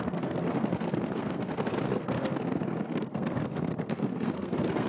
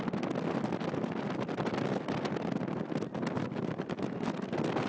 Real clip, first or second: second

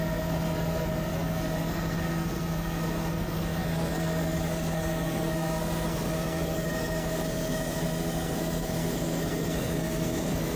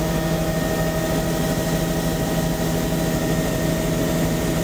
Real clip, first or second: second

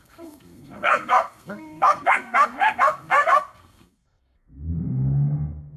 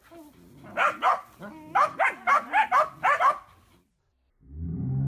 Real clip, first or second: second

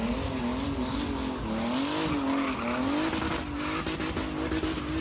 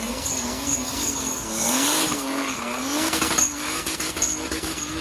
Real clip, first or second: first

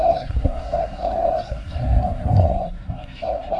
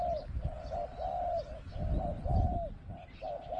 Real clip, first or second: second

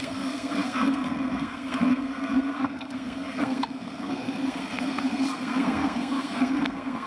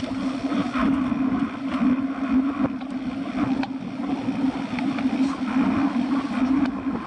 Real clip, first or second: second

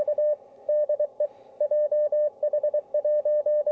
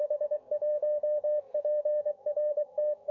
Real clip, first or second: first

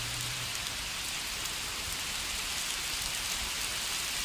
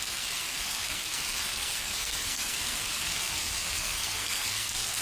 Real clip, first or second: first